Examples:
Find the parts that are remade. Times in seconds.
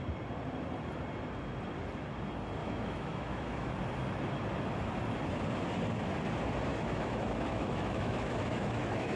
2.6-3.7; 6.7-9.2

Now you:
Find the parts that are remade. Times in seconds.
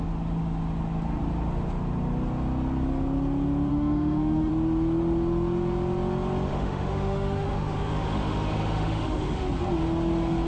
3.7-4.5; 6.5-9.4